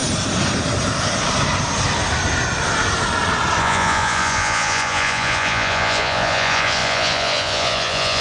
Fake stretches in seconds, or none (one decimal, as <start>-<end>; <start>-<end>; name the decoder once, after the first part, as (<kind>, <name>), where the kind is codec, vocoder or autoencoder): 3.6-8.2 (vocoder, Vocos)